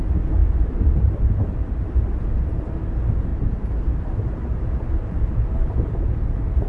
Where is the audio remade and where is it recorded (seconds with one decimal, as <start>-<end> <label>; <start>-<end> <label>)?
0.0-3.3 remade; 3.3-4.0 recorded; 4.0-6.7 remade